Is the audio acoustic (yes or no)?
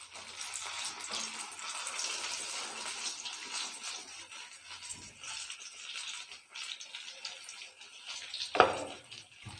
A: yes